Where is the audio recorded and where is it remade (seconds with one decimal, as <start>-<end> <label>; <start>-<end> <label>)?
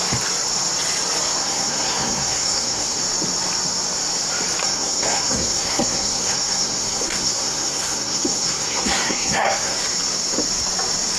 0.0-1.4 recorded; 1.4-3.0 remade; 3.0-4.6 recorded; 4.6-9.8 remade; 9.8-11.2 recorded